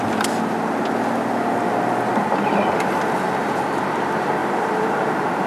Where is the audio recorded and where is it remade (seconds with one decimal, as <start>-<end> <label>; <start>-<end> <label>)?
0.0-4.4 recorded; 4.4-5.1 remade; 5.1-5.5 recorded